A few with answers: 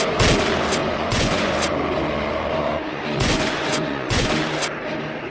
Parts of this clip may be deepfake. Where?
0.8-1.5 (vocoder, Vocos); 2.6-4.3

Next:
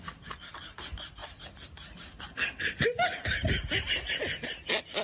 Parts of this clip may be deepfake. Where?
none

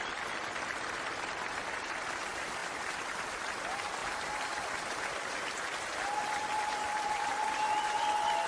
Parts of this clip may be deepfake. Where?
none

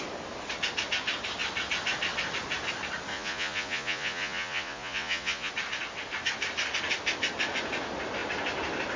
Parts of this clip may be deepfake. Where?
3.1-5.5 (vocoder, Vocos)

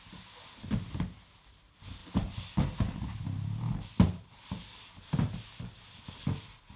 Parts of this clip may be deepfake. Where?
none

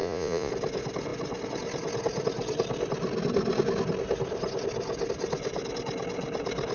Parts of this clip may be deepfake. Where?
0.0-0.5 (vocoder, Vocos)

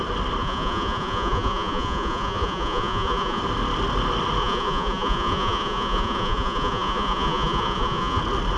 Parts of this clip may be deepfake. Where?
0.4-3.4 (vocoder, Vocos); 4.4-8.2